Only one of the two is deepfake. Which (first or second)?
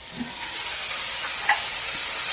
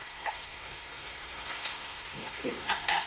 second